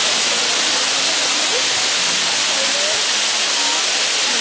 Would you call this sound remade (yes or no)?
no